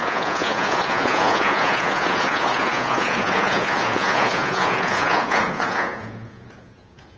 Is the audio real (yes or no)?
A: no